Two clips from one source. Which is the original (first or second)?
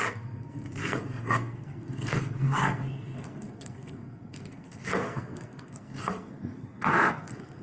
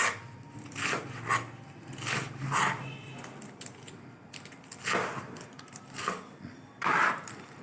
second